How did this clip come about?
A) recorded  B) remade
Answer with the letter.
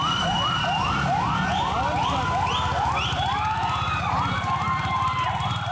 A